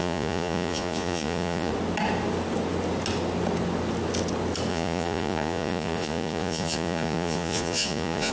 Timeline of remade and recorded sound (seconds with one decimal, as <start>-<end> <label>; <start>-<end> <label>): 0.0-1.7 remade; 1.7-4.7 recorded; 4.7-8.3 remade